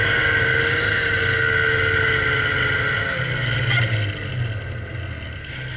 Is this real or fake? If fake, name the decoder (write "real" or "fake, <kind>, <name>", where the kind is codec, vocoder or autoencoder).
real